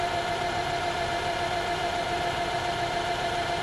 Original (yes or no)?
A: no